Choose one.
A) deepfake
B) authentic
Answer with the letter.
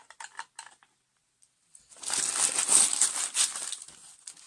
B